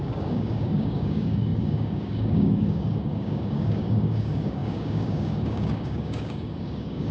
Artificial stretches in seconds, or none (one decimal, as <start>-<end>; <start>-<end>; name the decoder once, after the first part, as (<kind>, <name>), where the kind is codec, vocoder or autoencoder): 0.0-7.1 (codec, DAC)